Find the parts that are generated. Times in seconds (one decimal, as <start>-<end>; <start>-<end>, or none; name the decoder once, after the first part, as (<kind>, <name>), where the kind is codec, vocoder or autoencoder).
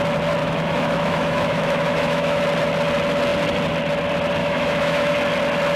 0.4-2.4 (autoencoder, DAC-VAE); 4.4-5.1